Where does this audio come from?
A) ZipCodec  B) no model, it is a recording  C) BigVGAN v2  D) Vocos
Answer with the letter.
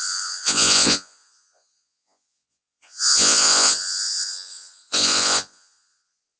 D